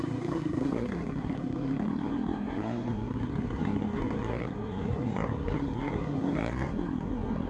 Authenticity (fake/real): fake